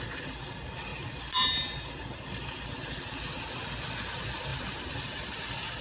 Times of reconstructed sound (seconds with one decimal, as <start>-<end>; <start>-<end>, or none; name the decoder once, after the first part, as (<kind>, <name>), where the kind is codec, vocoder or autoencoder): 0.9-1.6 (vocoder, BigVGAN v2); 4.5-5.8